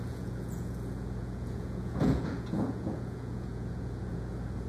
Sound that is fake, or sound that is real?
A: fake